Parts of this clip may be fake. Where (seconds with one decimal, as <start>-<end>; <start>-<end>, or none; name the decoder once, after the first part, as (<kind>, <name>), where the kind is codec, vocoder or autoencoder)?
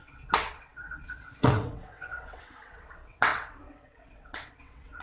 0.0-5.0 (vocoder, WaveNeXt)